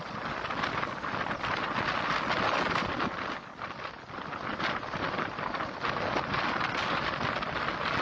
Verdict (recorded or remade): recorded